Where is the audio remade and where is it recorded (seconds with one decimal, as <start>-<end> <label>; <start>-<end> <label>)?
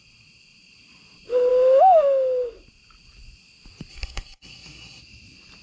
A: 0.0-3.9 recorded; 3.9-5.0 remade; 5.0-5.6 recorded